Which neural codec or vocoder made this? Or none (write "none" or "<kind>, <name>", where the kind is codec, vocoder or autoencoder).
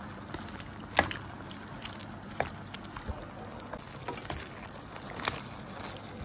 none